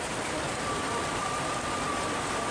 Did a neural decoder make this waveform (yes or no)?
yes